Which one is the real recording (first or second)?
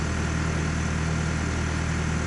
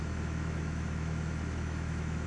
first